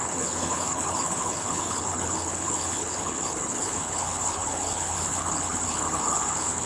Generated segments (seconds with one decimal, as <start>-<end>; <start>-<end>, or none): 0.0-6.7